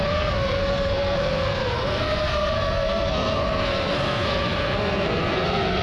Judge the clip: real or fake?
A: fake